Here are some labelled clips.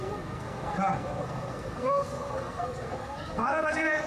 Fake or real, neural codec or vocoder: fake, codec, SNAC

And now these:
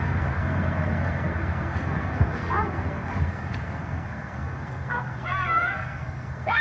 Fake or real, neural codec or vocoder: fake, codec, SNAC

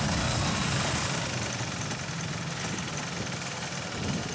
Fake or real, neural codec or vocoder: real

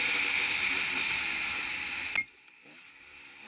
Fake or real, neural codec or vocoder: real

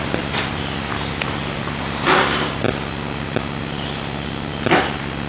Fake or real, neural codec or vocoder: real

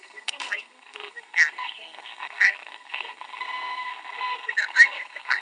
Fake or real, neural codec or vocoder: fake, codec, SNAC